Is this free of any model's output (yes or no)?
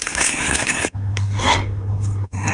no